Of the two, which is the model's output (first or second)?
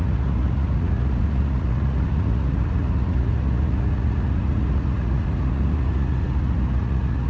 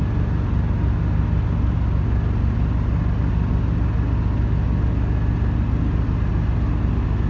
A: first